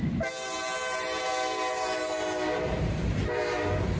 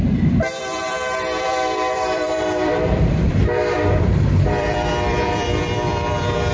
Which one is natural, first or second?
first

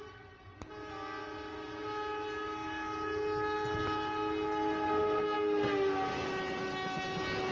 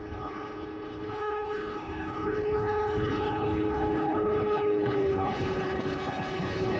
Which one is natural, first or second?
first